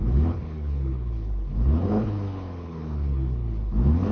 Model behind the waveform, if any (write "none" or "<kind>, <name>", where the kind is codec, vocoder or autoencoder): codec, HILCodec